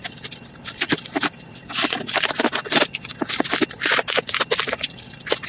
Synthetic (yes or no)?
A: no